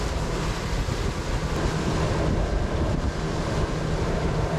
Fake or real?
real